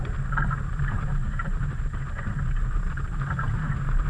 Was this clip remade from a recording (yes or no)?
yes